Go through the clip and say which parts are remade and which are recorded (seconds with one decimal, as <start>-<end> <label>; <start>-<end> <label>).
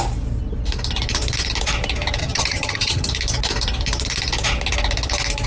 0.0-2.2 recorded; 2.2-3.1 remade; 3.1-5.5 recorded